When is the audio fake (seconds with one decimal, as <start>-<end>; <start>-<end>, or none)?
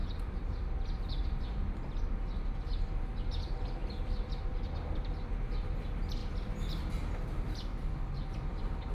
0.0-2.0; 3.8-4.6; 6.2-6.8